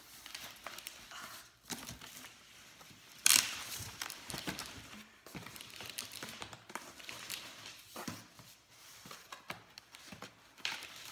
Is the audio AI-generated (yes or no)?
yes